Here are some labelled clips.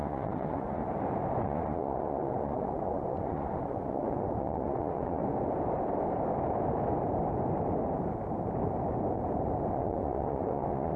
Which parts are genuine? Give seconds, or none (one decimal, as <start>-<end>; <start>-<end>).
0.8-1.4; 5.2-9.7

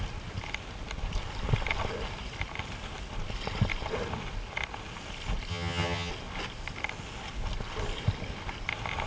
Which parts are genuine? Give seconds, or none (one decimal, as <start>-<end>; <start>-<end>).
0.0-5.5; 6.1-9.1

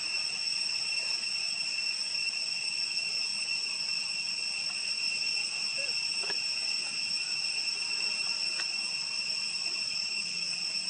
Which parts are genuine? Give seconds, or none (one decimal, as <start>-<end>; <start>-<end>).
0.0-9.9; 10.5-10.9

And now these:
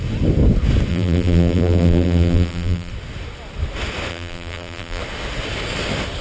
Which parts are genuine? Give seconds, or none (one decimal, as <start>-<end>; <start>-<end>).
0.0-0.9; 2.9-4.1; 5.0-6.2

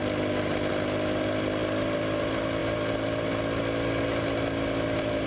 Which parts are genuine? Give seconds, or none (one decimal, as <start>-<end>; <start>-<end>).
0.0-5.3

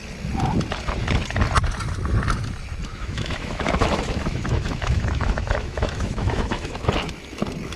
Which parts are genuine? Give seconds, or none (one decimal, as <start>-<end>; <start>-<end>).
0.0-2.9; 6.9-7.8

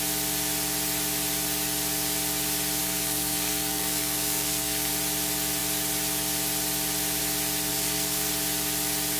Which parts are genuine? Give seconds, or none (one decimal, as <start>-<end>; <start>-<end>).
0.0-2.8; 4.9-7.7; 8.3-9.2

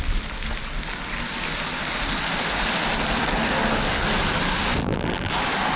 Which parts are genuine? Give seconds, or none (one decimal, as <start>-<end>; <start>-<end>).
0.0-4.8; 5.3-5.8